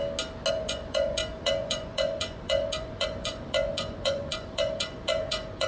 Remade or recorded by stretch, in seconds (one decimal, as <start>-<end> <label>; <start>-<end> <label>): 0.0-0.5 recorded; 0.5-5.7 remade